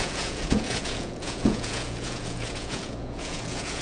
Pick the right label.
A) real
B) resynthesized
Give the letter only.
B